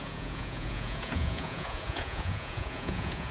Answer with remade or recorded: remade